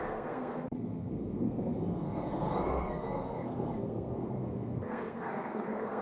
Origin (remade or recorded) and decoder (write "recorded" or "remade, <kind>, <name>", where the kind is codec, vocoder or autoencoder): remade, codec, SNAC